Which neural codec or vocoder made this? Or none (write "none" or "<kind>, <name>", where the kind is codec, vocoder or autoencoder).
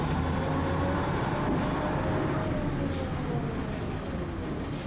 none